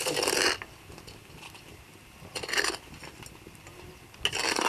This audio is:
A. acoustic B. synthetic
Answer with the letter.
A